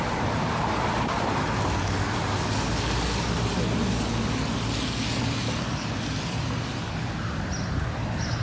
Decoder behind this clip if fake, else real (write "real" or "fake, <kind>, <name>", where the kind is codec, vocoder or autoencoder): real